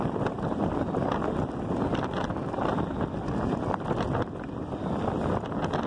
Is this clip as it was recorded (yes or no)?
yes